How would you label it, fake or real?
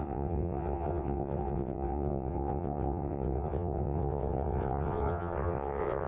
fake